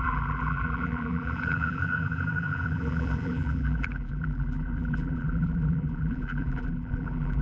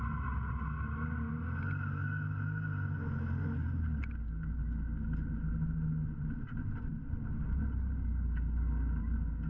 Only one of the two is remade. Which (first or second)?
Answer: first